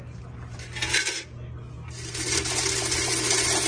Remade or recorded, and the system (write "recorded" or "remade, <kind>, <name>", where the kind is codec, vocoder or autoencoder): recorded